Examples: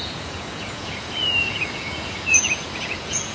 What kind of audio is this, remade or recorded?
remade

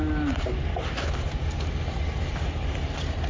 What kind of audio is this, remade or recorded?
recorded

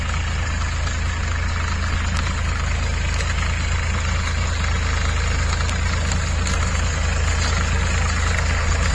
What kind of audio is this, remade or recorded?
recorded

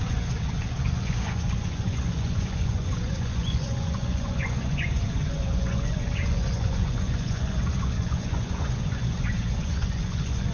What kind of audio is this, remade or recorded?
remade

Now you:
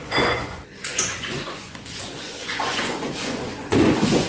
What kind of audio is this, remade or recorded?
remade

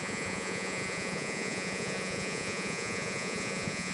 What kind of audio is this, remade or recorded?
remade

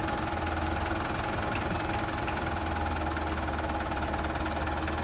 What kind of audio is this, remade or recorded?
recorded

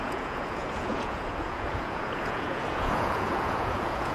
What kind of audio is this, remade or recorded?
remade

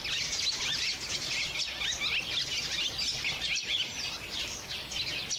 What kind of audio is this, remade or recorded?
recorded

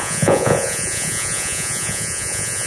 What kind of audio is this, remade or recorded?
remade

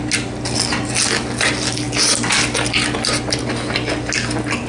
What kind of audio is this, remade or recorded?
recorded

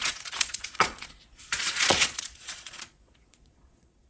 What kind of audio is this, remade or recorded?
remade